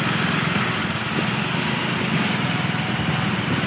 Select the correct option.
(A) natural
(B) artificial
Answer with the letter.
A